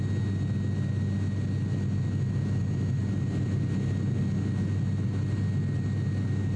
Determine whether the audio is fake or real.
real